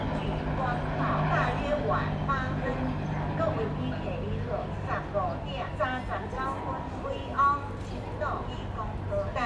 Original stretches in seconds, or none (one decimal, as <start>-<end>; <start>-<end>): 0.0-9.5